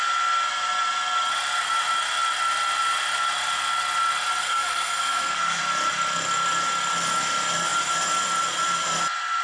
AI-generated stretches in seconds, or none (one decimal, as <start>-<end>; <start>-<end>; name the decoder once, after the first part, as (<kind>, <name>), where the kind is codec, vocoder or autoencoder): 4.4-5.6 (codec, SNAC)